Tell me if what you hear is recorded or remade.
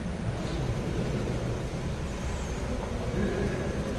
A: recorded